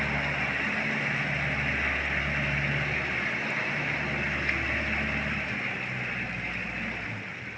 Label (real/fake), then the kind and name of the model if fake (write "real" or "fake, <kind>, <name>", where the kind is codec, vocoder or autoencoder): real